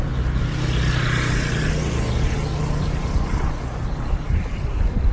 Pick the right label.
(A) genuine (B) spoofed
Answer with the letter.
A